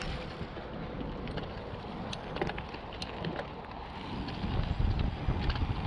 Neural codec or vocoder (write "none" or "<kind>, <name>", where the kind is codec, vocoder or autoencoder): none